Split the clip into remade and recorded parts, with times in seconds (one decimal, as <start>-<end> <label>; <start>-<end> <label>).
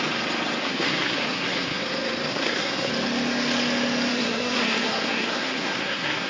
0.0-0.6 recorded; 0.6-1.8 remade; 1.8-2.3 recorded; 2.3-2.9 remade; 2.9-4.1 recorded; 4.1-6.3 remade